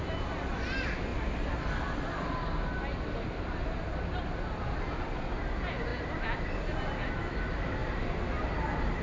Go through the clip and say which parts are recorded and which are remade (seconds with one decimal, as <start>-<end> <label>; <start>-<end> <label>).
0.0-9.0 recorded